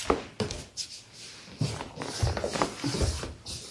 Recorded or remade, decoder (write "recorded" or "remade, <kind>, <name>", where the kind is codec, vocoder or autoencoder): recorded